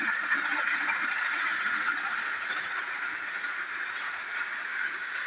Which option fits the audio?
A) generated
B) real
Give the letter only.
A